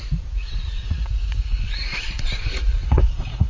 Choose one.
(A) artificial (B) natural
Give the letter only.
A